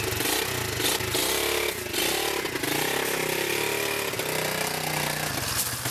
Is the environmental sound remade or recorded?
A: recorded